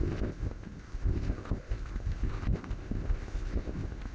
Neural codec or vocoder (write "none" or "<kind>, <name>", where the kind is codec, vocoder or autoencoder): codec, ZipCodec